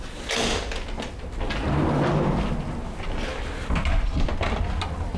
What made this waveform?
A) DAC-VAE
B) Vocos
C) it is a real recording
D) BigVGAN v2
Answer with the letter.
C